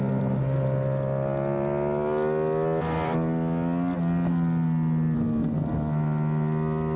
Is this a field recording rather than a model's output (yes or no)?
yes